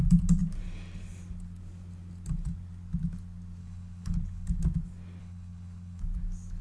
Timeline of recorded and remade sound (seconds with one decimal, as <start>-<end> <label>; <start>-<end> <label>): 0.0-3.6 recorded; 3.6-4.6 remade; 4.6-5.2 recorded; 5.2-6.0 remade; 6.0-6.6 recorded